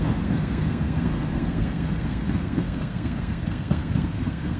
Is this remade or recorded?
remade